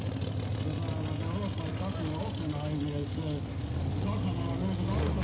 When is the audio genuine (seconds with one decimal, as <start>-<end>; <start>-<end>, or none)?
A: 0.0-5.2